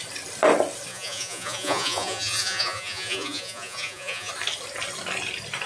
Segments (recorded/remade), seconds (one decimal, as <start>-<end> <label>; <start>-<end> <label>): 0.0-0.9 recorded; 0.9-4.3 remade; 4.3-5.7 recorded